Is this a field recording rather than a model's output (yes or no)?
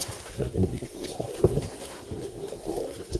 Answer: no